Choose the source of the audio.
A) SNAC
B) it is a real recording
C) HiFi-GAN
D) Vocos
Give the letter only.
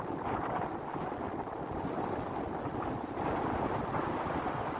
B